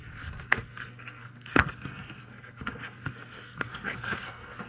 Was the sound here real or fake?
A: fake